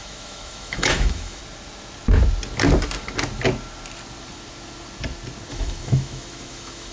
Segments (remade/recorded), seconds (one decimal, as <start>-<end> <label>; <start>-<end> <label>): 0.0-1.4 remade; 1.4-5.5 recorded; 5.5-6.9 remade